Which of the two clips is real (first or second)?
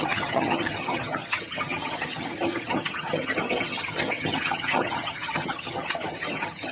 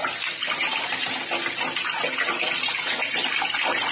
second